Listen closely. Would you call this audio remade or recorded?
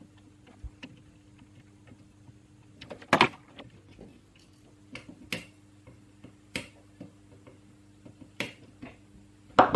recorded